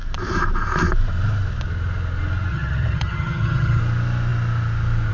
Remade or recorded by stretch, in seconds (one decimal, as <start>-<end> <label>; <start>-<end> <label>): 0.0-2.5 recorded; 2.5-3.8 remade; 3.8-5.1 recorded